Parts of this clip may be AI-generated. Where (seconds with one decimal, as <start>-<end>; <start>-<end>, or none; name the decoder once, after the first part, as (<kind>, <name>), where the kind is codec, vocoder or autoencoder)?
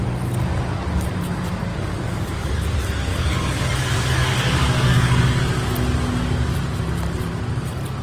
1.7-2.6 (codec, DAC); 3.1-5.3